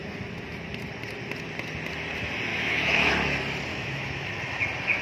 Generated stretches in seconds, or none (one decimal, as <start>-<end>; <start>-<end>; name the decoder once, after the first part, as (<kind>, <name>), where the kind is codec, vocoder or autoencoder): 2.5-3.1 (autoencoder, DAC-VAE); 3.7-4.4